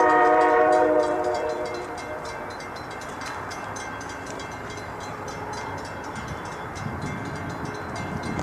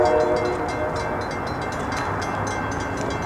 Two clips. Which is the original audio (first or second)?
second